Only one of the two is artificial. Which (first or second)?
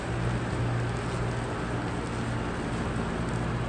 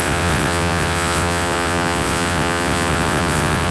second